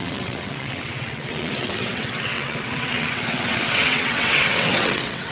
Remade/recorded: remade